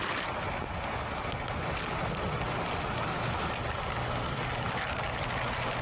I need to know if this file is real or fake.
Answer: real